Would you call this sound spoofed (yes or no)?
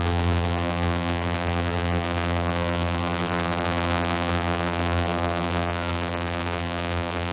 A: yes